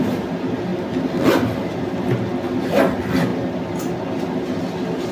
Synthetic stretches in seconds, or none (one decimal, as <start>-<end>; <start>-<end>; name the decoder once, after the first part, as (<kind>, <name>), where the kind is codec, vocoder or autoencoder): 0.7-1.7 (vocoder, BigVGAN v2)